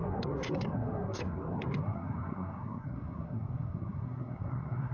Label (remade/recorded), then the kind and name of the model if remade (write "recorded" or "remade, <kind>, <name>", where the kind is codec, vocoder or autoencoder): remade, codec, SNAC